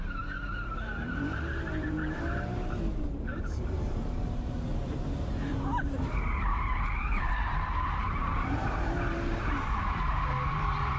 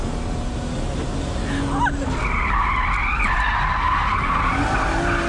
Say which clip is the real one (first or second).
second